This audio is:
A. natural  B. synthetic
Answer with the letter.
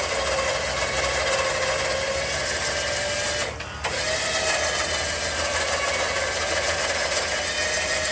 A